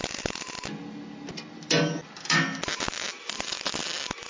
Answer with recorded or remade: recorded